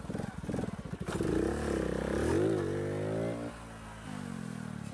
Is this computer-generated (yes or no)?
no